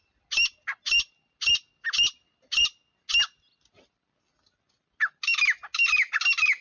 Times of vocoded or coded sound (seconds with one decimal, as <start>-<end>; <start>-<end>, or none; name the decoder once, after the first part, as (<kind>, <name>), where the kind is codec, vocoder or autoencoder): none

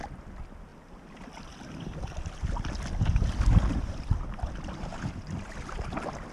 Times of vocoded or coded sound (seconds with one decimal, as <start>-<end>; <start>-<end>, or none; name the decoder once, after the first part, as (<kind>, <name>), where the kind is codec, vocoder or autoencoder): none

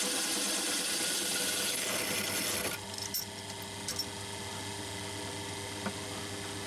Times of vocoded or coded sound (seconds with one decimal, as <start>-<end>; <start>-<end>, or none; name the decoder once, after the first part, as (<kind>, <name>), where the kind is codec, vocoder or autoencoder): none

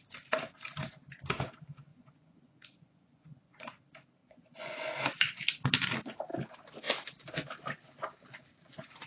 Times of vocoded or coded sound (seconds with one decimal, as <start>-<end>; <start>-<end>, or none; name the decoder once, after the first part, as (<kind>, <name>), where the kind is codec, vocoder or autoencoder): 1.9-3.8 (vocoder, Vocos); 4.2-5.3

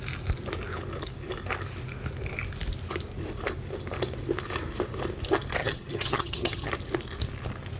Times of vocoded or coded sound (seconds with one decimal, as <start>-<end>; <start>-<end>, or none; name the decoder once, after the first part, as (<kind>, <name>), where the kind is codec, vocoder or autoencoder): 5.6-6.7 (vocoder, HiFi-GAN)

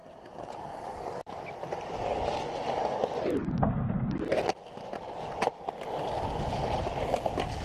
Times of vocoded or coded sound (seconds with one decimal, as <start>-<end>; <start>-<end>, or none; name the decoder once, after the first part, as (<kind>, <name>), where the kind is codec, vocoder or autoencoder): none

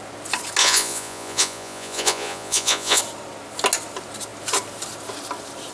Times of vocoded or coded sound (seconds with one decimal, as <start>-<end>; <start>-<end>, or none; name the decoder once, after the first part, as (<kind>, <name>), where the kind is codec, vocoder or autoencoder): 0.6-3.0 (vocoder, Vocos)